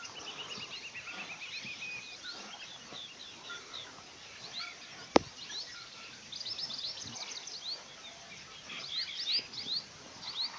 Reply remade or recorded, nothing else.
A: recorded